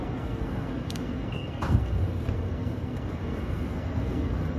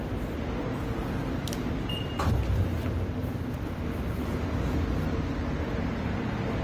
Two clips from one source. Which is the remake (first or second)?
first